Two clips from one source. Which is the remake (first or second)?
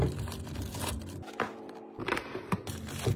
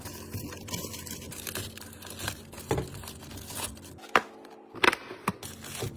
first